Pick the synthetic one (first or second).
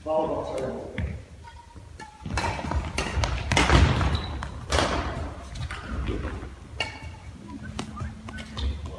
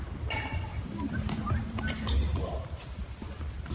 second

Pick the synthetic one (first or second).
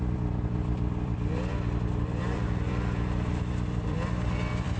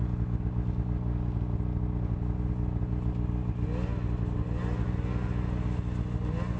first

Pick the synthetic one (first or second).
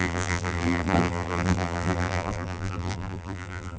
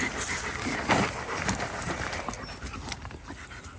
first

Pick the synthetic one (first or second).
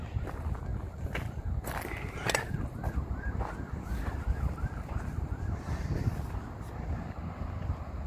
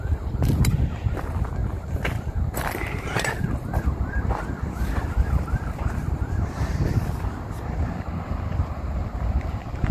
second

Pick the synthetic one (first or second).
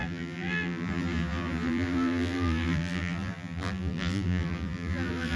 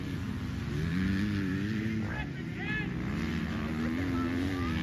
first